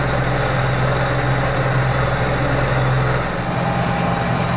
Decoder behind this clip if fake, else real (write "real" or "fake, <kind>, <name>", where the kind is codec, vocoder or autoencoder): real